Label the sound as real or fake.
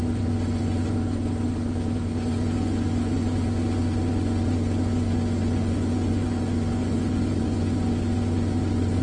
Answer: fake